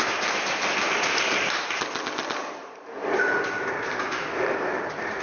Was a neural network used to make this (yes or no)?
yes